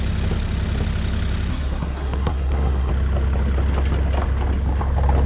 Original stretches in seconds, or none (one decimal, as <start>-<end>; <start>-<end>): 0.0-1.5; 2.9-5.3